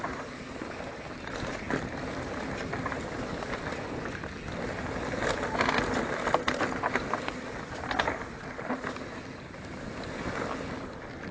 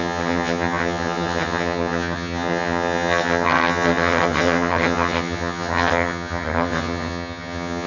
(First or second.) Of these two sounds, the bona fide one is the first